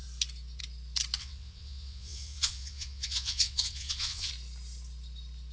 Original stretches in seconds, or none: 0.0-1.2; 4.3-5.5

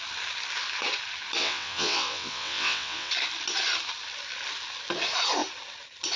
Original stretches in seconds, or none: 0.0-1.4; 3.1-6.2

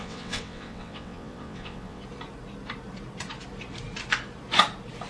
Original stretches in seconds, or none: 2.0-5.1

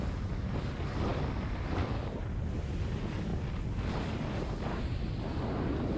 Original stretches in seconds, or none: 0.0-6.0

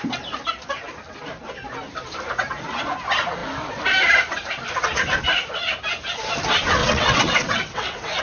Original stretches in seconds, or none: 0.0-6.8

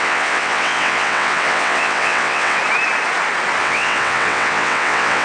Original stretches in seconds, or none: 2.6-3.6